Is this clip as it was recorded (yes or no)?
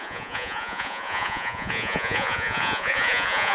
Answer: no